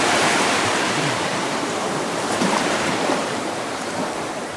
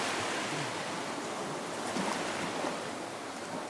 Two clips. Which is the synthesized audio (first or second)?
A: first